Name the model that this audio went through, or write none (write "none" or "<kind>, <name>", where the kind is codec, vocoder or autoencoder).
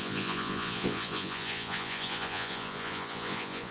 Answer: vocoder, Vocos